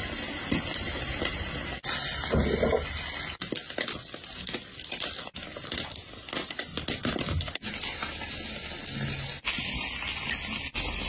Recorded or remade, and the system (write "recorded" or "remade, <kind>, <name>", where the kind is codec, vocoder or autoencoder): recorded